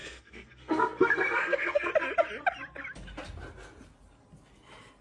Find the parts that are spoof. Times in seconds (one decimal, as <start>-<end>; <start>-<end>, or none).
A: 0.0-1.9